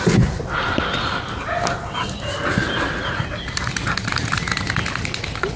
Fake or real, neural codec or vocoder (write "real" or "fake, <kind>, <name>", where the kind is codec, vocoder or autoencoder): real